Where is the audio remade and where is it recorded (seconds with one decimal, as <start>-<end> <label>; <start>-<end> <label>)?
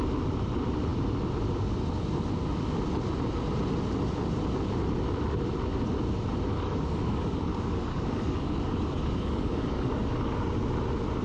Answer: 0.0-6.5 recorded; 6.5-10.4 remade; 10.4-11.2 recorded